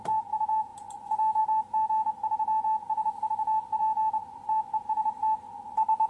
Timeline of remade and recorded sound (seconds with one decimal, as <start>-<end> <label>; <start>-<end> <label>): 0.0-6.1 recorded